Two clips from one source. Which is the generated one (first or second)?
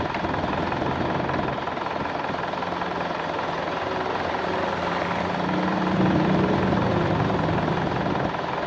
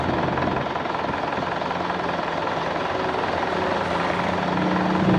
first